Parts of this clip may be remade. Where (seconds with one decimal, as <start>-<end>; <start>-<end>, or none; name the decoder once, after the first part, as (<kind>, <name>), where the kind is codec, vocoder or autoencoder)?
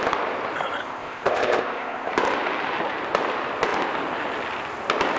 0.8-2.1 (codec, ZipCodec)